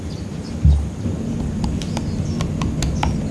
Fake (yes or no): no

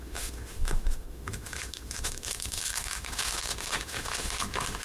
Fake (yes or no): yes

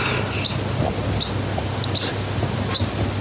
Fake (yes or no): no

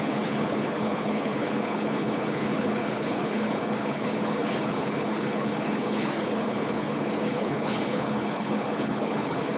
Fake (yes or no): yes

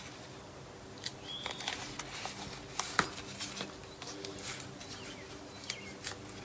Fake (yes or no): no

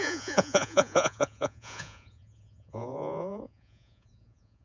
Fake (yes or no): yes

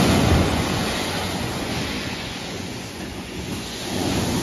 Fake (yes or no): yes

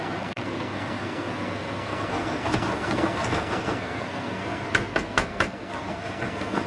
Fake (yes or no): yes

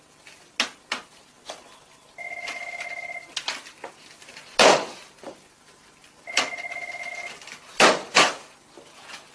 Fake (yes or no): no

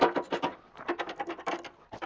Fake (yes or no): yes